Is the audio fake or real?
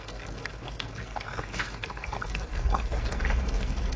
fake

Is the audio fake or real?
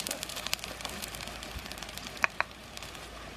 fake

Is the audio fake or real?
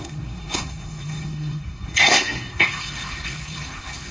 fake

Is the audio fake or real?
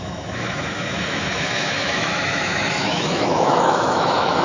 fake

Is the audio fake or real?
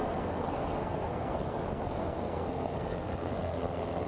fake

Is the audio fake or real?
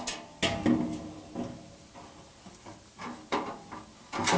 real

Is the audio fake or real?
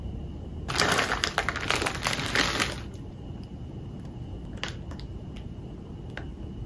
real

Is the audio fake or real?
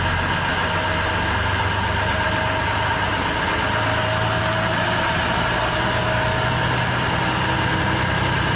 real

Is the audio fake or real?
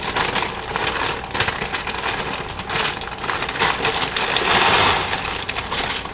real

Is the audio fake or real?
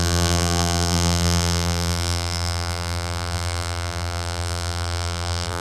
fake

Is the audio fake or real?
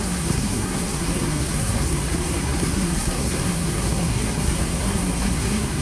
fake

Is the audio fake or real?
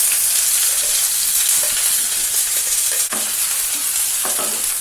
real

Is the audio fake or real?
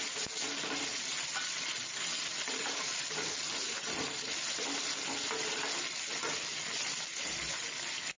real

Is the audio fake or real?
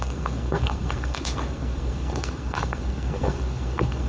fake